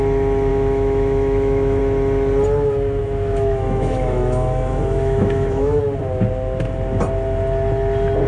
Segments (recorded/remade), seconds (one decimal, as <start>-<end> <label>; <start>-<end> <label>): 0.0-0.5 recorded; 0.5-1.8 remade; 1.8-3.0 recorded; 3.0-5.8 remade; 5.8-8.3 recorded